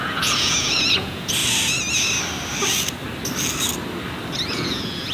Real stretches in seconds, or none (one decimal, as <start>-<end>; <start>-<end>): 1.4-4.5